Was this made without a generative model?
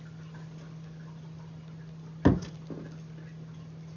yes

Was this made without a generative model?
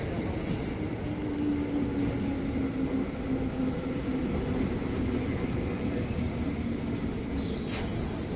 yes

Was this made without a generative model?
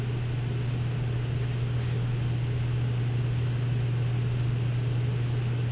yes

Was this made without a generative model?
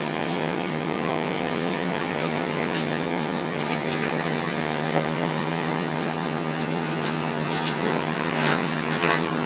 no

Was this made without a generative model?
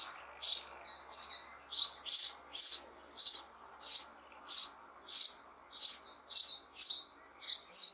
yes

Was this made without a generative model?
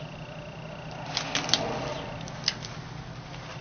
yes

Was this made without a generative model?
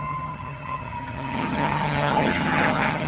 no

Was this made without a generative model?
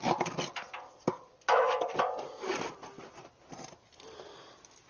yes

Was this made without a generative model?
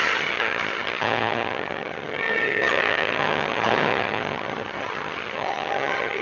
no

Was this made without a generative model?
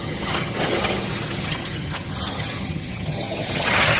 no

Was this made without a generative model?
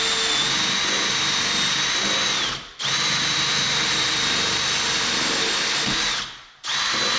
yes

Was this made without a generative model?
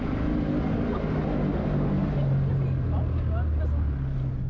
yes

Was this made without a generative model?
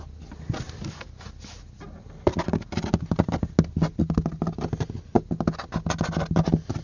yes